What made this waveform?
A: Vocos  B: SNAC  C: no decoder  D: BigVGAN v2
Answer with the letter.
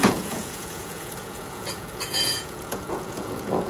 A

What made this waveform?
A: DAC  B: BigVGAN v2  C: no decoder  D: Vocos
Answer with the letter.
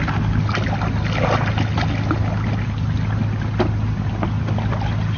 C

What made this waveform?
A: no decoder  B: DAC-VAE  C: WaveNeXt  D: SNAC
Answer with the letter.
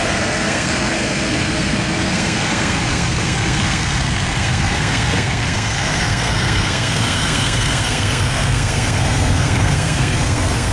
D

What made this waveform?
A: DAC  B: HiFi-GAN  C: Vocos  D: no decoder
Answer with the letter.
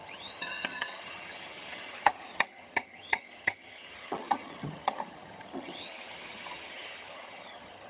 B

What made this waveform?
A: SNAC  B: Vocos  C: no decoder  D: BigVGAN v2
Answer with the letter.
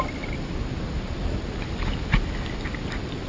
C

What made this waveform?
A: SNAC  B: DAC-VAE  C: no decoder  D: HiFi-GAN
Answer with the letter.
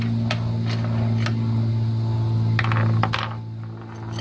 C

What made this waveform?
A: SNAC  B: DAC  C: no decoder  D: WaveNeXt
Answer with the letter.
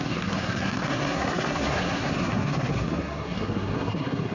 A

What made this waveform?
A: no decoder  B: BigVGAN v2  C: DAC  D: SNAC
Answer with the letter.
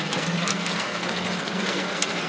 D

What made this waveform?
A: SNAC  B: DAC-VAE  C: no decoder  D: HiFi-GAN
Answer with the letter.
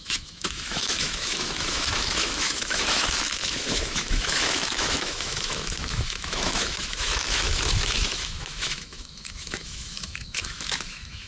B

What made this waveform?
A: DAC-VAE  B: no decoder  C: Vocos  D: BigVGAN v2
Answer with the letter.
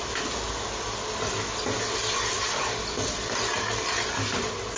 B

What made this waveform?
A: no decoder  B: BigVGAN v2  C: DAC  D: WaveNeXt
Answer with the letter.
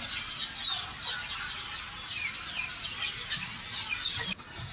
A